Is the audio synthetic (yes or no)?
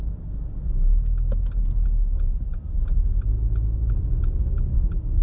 no